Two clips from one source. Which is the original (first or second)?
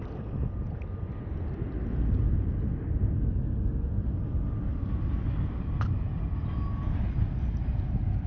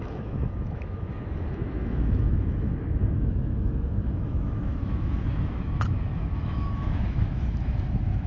first